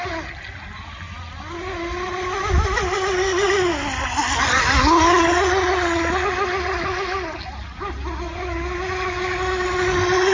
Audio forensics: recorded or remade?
recorded